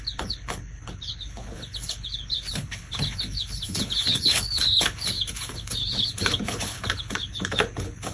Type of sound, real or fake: fake